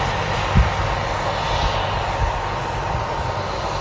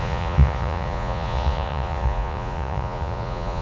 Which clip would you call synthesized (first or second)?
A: second